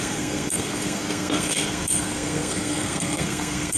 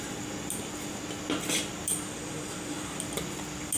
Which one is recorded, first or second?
second